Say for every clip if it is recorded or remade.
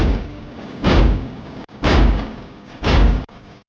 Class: remade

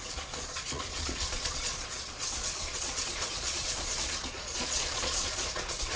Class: remade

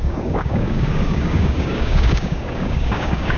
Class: remade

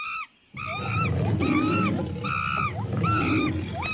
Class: recorded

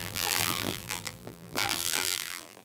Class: remade